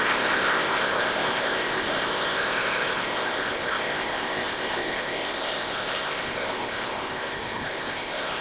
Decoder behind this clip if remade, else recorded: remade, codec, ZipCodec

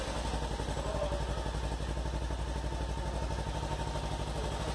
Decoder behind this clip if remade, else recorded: recorded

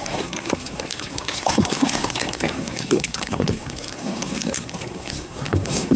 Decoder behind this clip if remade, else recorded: remade, codec, SNAC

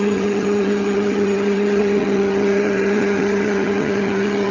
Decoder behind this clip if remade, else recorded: remade, vocoder, HiFi-GAN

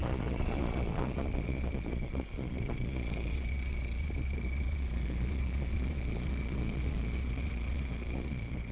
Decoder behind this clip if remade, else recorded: remade, vocoder, Vocos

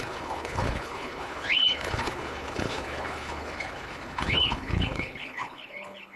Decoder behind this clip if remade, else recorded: remade, codec, HILCodec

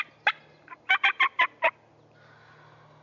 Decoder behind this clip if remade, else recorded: recorded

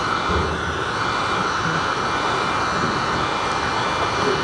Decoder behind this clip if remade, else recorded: recorded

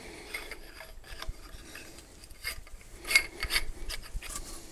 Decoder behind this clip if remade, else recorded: remade, vocoder, BigVGAN v2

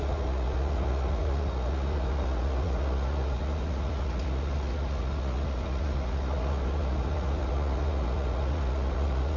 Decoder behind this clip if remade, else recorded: remade, vocoder, Vocos